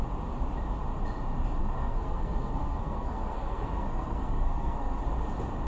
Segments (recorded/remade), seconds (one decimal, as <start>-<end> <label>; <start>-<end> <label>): 0.0-1.6 recorded; 1.6-5.0 remade; 5.0-5.7 recorded